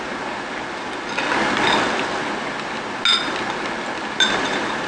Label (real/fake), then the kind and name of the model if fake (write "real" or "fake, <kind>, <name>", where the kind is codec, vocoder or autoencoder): real